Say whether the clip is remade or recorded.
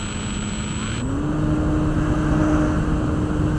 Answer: recorded